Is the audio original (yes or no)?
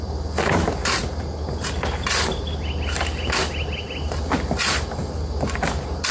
yes